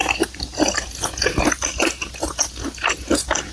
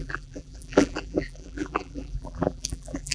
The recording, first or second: first